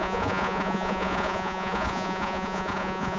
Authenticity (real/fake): fake